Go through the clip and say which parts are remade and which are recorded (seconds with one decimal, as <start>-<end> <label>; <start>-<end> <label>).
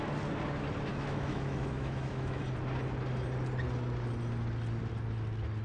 0.0-0.9 recorded; 0.9-2.4 remade; 2.4-5.6 recorded